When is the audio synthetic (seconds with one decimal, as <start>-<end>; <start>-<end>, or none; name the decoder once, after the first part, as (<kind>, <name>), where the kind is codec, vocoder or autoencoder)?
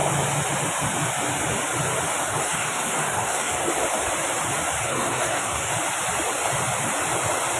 2.3-3.7 (codec, SNAC); 4.8-5.7